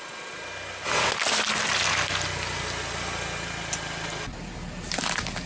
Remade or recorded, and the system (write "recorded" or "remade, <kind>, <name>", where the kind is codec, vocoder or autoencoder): recorded